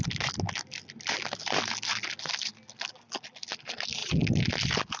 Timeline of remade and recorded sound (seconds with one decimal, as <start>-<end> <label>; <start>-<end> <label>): 0.0-5.0 recorded

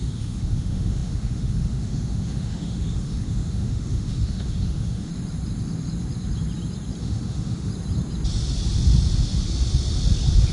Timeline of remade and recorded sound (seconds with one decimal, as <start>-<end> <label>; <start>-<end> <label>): 0.0-5.1 remade; 5.1-7.0 recorded; 7.0-7.7 remade; 7.7-10.5 recorded

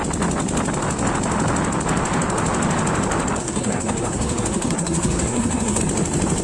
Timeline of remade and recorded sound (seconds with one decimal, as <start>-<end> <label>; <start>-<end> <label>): 0.0-3.4 recorded; 3.4-5.8 remade; 5.8-6.4 recorded